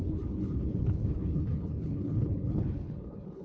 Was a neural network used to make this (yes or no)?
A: yes